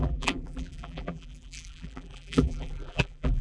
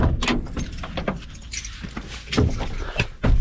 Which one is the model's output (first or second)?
first